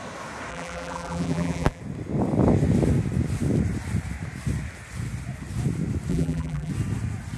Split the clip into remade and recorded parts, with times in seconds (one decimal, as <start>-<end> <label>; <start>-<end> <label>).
0.0-0.5 recorded; 0.5-1.8 remade; 1.8-6.1 recorded; 6.1-6.7 remade; 6.7-7.4 recorded